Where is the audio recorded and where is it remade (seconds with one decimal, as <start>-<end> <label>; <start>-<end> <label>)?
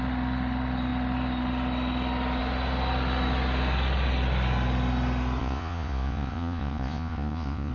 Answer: 0.0-5.4 recorded; 5.4-7.7 remade